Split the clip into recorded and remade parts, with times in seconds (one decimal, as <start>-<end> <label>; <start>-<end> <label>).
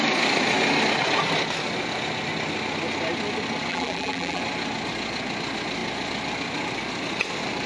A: 0.0-3.7 recorded; 3.7-4.4 remade; 4.4-7.7 recorded